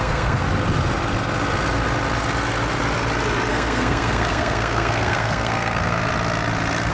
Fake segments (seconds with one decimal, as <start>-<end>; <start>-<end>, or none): 0.0-0.4; 3.5-6.0

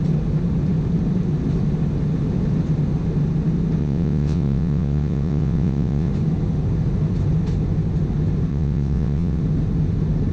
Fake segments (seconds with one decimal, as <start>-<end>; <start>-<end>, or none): 3.8-6.1; 8.5-9.4

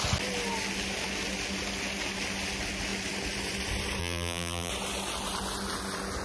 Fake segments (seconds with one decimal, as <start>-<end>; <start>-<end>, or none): 4.0-4.7

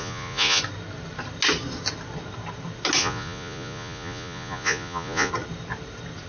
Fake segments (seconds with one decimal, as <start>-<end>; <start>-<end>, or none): 0.0-0.6; 3.0-5.3

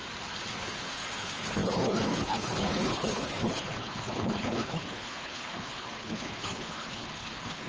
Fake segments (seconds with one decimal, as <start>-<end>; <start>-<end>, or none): 0.6-7.7